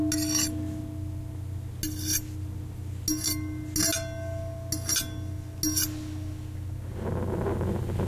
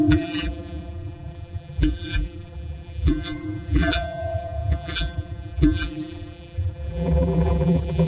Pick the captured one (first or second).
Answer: first